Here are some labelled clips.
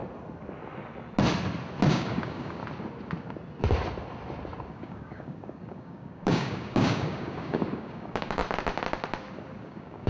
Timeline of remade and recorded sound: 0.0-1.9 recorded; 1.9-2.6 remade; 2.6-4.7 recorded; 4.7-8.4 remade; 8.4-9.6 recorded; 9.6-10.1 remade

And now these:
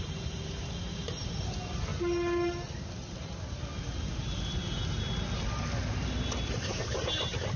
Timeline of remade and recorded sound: 0.0-1.9 remade; 1.9-6.5 recorded; 6.5-7.6 remade

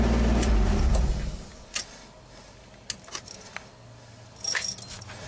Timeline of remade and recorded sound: 0.0-5.3 recorded

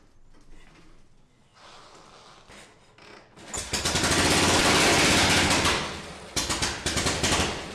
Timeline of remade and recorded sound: 0.0-7.7 recorded

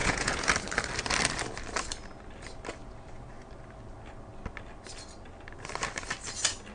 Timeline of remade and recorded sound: 0.0-0.5 remade; 0.5-6.7 recorded

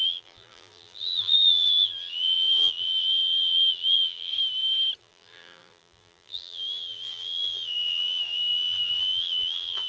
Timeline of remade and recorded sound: 0.0-4.3 remade; 4.3-5.0 recorded; 5.0-9.9 remade